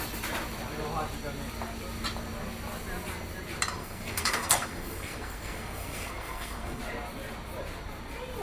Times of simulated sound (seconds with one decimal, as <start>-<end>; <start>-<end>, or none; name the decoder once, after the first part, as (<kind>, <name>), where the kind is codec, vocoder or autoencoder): 3.8-6.8 (codec, SNAC)